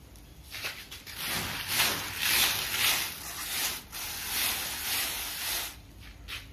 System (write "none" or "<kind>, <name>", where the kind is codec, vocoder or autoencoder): none